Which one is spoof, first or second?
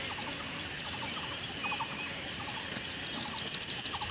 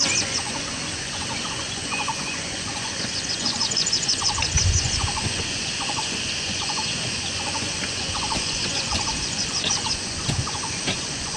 second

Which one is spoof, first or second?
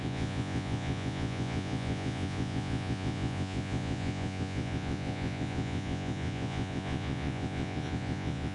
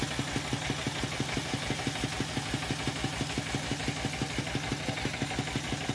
first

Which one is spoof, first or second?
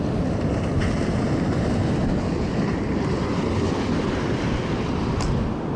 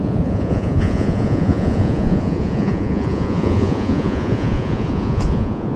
second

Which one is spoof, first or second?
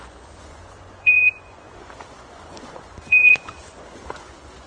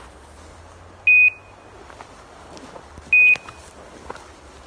first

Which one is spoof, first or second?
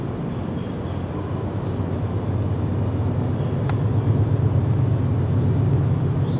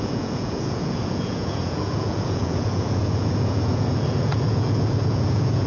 second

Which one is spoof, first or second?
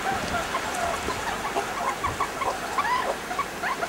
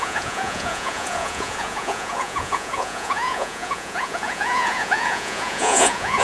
second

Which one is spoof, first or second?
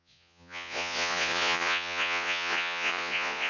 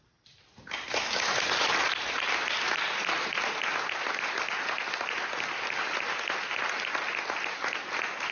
first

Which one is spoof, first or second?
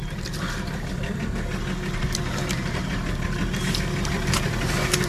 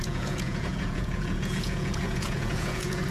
second